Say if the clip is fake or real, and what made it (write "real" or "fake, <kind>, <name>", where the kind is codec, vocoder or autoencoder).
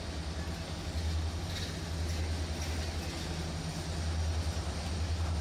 real